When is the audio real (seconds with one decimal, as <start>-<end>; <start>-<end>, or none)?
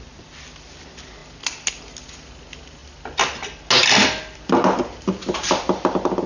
0.0-6.3